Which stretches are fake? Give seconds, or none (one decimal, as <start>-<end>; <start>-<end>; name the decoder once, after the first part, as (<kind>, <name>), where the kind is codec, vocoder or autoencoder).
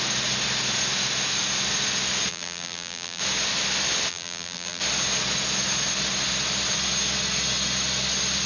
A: 2.3-3.2 (vocoder, BigVGAN v2); 4.1-4.8